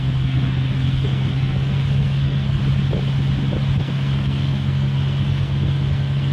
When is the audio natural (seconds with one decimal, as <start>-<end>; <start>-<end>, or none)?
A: 2.6-3.8

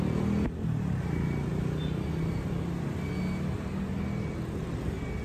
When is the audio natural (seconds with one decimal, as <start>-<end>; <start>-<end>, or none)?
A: 0.0-5.2

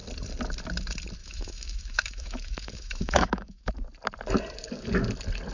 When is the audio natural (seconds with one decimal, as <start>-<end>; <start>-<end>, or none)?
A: 0.0-1.2; 3.7-5.5

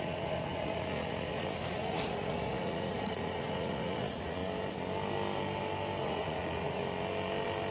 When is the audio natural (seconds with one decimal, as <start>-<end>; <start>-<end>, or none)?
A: 4.4-6.0; 6.8-7.7

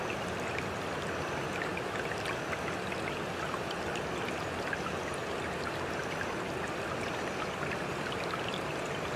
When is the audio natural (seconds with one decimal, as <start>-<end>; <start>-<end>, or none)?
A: 0.0-9.2